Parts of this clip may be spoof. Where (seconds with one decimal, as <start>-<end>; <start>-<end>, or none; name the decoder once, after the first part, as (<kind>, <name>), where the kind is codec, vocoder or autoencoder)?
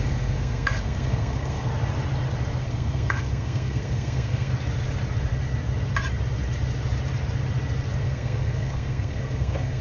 0.0-1.7 (codec, SNAC); 2.6-4.5; 8.0-9.8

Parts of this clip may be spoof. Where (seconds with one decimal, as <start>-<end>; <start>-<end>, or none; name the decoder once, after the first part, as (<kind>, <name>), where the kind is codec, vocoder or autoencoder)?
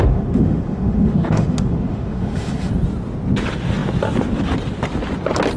0.0-2.7 (autoencoder, DAC-VAE)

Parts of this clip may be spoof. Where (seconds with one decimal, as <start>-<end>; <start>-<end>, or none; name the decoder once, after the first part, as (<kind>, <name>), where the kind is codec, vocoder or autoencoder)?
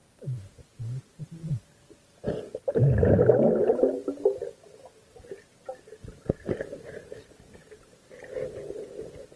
0.0-1.5 (vocoder, BigVGAN v2)